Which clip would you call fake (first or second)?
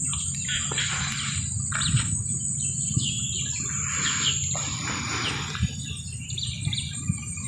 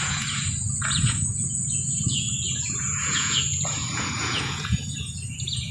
second